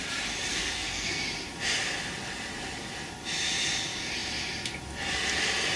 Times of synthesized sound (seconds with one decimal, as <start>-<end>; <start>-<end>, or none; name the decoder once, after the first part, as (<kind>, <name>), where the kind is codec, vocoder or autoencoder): 0.5-1.2 (codec, SNAC)